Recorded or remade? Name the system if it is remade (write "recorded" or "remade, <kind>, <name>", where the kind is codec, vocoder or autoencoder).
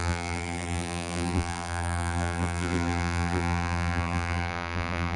remade, vocoder, BigVGAN v2